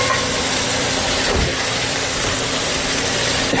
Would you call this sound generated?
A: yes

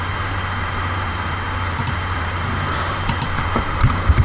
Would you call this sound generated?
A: yes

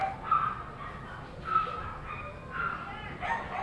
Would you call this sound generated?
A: no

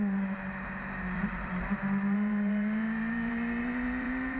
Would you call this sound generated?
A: yes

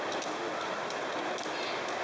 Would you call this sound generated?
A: yes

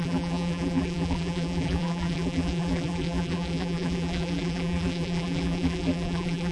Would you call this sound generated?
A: yes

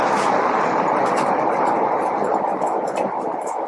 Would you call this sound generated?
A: yes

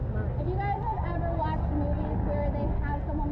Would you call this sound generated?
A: no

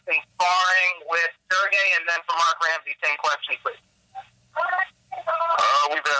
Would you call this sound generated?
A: yes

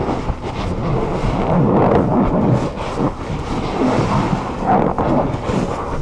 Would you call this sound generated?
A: no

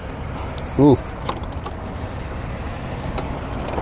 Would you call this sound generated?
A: no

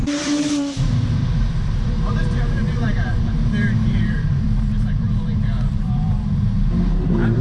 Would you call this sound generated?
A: yes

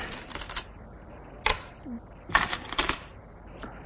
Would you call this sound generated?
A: no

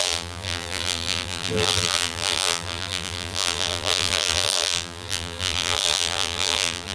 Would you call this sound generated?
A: yes